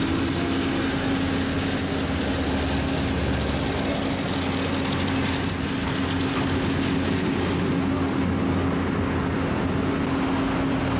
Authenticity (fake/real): real